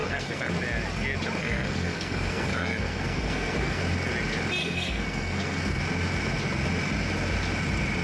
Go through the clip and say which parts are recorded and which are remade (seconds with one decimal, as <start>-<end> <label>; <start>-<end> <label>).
0.0-0.5 remade; 0.5-1.4 recorded; 1.4-3.8 remade; 3.8-4.6 recorded; 4.6-5.8 remade; 5.8-8.0 recorded